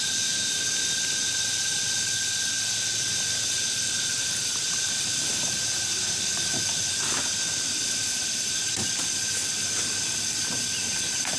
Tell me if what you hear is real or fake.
fake